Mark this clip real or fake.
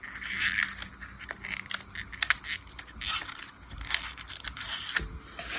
real